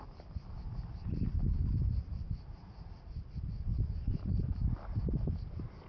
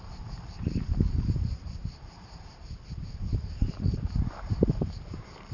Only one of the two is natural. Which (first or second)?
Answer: first